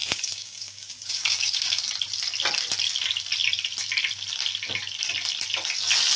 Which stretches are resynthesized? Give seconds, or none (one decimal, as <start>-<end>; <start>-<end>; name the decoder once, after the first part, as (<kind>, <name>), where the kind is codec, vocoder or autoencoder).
0.0-1.8 (codec, DAC)